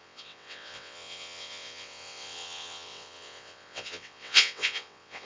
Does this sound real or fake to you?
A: fake